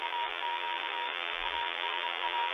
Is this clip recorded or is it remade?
remade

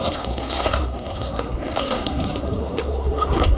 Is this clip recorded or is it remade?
remade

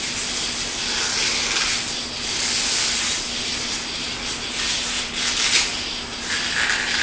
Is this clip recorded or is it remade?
recorded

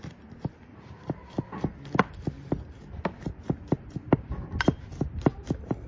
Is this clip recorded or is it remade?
recorded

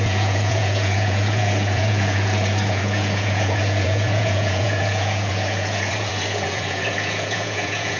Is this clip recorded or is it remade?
remade